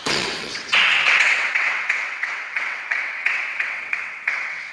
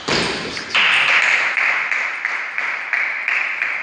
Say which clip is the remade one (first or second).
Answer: first